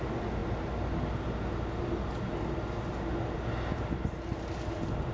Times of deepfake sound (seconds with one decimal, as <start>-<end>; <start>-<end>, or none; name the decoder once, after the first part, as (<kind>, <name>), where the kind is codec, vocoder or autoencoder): none